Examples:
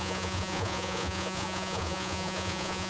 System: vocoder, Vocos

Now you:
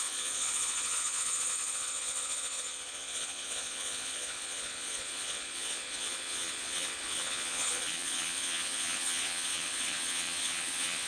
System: vocoder, Vocos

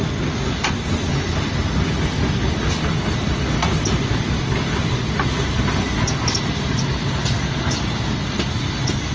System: none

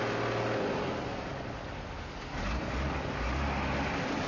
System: none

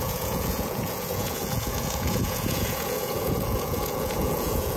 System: vocoder, Vocos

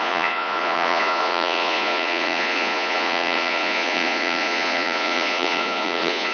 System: vocoder, Vocos